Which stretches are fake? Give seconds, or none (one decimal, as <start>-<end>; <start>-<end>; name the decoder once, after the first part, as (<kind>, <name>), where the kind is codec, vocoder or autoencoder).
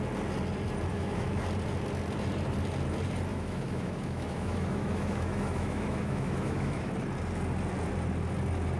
0.9-1.4 (autoencoder, DAC-VAE); 3.3-6.9